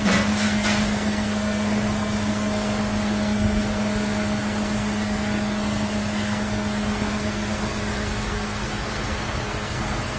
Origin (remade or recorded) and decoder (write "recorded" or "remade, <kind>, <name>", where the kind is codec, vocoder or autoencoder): remade, codec, SNAC